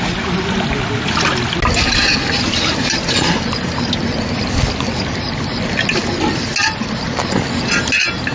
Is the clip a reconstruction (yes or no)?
no